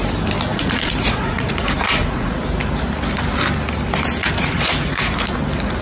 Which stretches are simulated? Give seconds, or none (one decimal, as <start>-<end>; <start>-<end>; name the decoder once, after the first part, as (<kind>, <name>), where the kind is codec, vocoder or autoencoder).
0.5-2.4 (vocoder, Vocos); 4.2-5.1